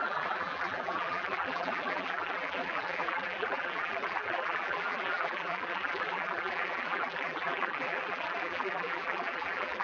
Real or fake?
fake